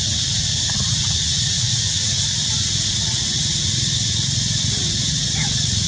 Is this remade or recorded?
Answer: remade